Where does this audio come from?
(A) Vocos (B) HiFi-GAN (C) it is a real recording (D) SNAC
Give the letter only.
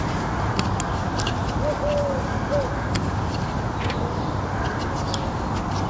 C